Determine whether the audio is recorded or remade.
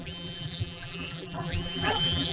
remade